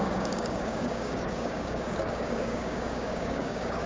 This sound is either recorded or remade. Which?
remade